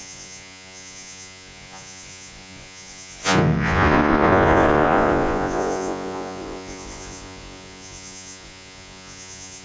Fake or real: fake